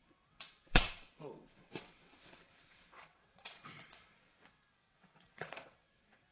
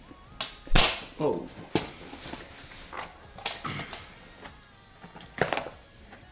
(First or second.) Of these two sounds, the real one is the second